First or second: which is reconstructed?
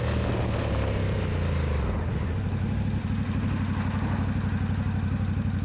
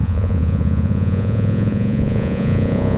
second